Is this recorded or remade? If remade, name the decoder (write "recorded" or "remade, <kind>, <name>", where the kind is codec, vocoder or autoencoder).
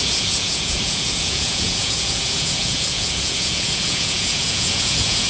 remade, vocoder, Vocos